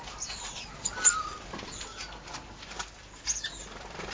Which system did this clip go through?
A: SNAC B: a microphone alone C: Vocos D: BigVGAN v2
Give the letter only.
B